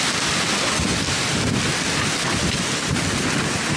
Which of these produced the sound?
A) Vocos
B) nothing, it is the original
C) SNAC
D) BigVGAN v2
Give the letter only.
B